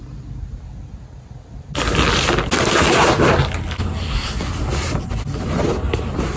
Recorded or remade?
recorded